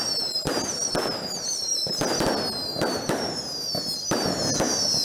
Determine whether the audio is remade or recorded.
recorded